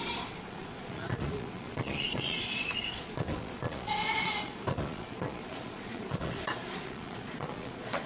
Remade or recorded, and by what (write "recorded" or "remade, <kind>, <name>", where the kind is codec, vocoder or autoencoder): remade, vocoder, Vocos